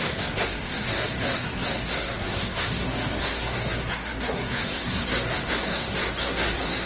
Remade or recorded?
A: remade